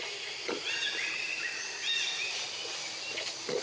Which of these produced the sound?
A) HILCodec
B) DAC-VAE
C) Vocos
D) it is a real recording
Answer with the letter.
D